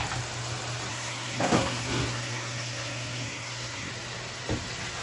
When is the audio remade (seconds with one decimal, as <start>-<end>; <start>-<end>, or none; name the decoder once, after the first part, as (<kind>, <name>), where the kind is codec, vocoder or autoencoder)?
0.9-3.9 (codec, SNAC)